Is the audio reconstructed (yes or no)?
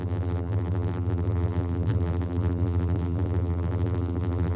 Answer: yes